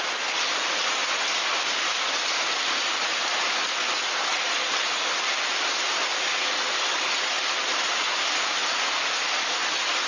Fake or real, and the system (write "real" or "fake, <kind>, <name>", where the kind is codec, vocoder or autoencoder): real